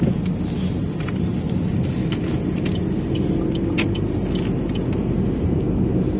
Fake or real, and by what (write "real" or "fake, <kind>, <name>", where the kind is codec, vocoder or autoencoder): real